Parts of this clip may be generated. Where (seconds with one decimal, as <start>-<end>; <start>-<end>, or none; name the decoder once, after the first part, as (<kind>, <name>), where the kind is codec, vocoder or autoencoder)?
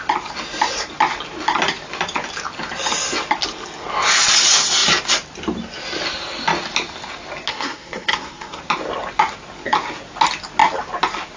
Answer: 7.5-8.6 (codec, SNAC)